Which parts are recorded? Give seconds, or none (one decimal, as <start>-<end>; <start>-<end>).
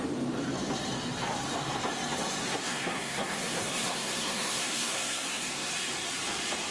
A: 0.0-2.4; 5.7-6.7